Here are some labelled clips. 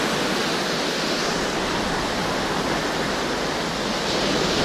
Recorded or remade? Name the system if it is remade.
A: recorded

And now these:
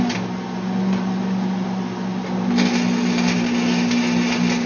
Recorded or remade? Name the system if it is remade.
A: recorded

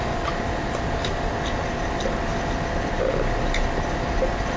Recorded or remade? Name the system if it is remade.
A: recorded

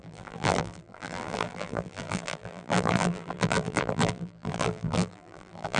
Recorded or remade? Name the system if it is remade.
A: remade, vocoder, BigVGAN v2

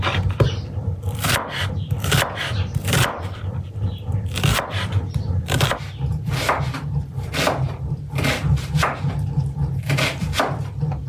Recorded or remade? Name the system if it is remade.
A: remade, vocoder, BigVGAN v2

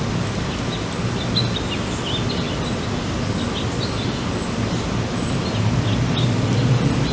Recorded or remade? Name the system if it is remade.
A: recorded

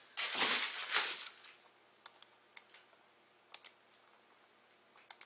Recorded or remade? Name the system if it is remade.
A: recorded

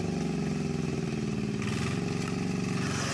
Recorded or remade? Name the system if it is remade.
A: recorded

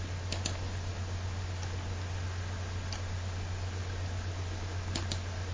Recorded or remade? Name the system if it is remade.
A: recorded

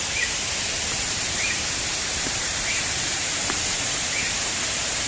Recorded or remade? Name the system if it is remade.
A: remade, vocoder, BigVGAN v2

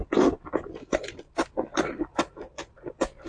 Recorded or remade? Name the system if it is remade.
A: recorded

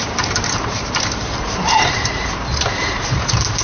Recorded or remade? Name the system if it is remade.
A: remade, vocoder, BigVGAN v2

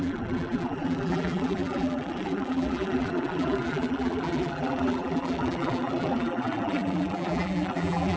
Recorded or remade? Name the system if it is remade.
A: remade, vocoder, BigVGAN v2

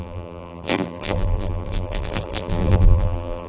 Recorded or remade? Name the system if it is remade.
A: remade, vocoder, BigVGAN v2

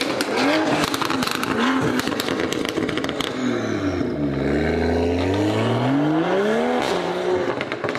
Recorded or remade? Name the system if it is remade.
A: recorded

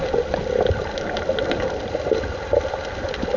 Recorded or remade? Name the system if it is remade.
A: recorded